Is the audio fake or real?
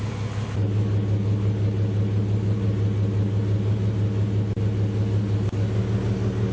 real